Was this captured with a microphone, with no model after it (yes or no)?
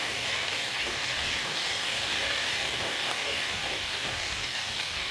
no